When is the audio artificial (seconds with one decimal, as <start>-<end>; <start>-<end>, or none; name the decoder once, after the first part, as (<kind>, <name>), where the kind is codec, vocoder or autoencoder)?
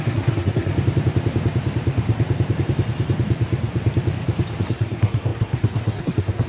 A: 0.0-0.7 (codec, SNAC); 4.6-6.5